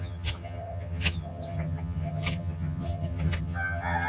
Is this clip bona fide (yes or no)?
no